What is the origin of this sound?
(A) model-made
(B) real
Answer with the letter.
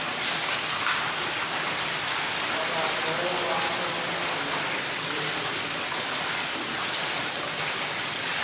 B